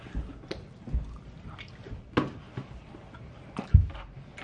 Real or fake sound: real